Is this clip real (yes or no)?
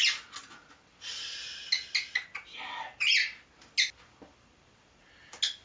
yes